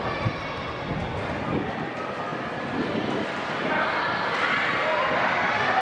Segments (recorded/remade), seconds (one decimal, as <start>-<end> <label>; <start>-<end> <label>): 0.0-5.8 recorded